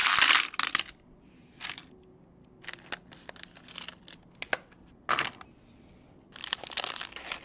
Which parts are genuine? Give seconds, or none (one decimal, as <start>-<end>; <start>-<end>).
0.0-7.4